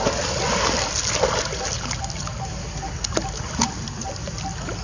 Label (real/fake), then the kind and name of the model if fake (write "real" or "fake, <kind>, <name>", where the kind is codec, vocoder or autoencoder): real